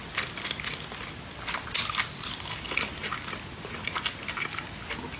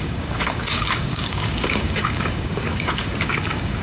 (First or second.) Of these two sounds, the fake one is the second